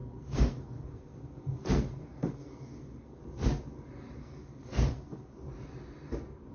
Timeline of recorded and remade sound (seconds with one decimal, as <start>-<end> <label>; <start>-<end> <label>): 0.0-3.2 remade; 3.2-4.2 recorded; 4.2-5.3 remade; 5.3-6.5 recorded